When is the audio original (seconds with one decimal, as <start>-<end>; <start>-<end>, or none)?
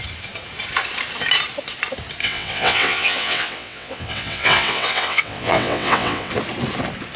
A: 0.0-2.2; 6.3-7.2